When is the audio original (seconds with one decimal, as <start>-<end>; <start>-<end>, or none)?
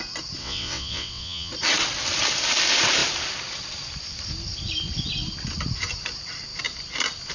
0.0-0.4; 1.5-7.3